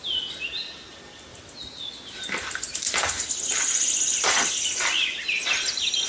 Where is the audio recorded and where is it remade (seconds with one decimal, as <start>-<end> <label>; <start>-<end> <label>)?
0.0-6.1 recorded